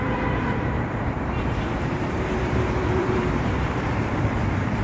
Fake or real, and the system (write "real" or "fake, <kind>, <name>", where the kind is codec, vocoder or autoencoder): fake, vocoder, BigVGAN v2